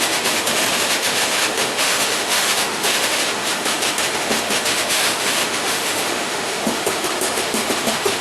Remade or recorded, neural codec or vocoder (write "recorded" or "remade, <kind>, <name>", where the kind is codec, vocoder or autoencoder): remade, autoencoder, DAC-VAE